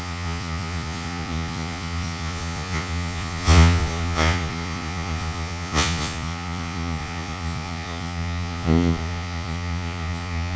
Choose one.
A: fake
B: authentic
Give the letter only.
A